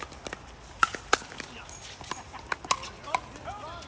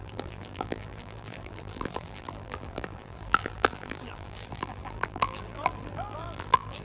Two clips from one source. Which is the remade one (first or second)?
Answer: second